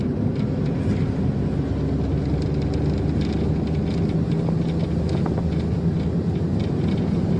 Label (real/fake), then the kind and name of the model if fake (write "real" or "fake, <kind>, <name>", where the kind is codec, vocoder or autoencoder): real